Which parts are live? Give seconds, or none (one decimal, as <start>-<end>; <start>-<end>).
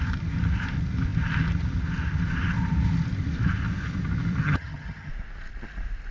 0.0-4.4; 5.1-6.1